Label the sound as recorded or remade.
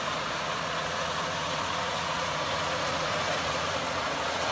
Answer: remade